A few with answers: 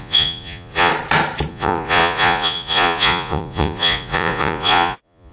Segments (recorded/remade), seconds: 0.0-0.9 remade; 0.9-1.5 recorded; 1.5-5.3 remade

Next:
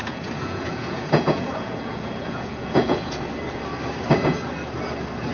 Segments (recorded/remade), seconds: 0.0-3.2 remade; 3.2-5.3 recorded

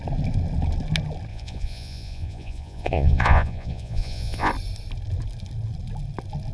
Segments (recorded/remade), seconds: 0.0-1.3 recorded; 1.3-4.5 remade; 4.5-6.5 recorded

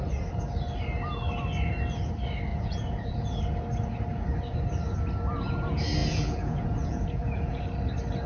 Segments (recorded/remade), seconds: 0.0-2.5 recorded; 2.5-3.4 remade; 3.4-6.0 recorded; 6.0-7.6 remade; 7.6-8.3 recorded

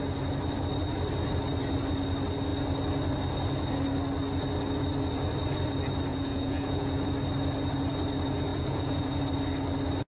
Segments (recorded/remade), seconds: 0.0-6.1 recorded; 6.1-7.0 remade; 7.0-8.5 recorded; 8.5-9.2 remade; 9.2-10.1 recorded